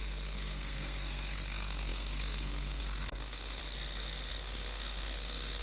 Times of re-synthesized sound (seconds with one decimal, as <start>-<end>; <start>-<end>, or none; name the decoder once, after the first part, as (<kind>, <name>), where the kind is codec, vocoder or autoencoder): 0.0-3.6 (codec, SNAC); 4.3-5.6